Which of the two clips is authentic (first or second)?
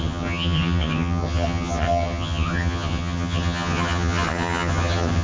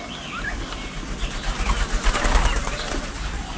second